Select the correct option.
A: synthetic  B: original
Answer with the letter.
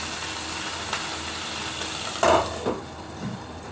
A